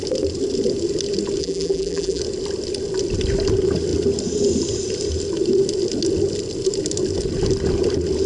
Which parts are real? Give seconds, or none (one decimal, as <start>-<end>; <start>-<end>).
0.0-1.4; 2.2-8.3